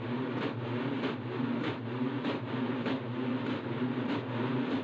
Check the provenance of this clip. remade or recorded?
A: recorded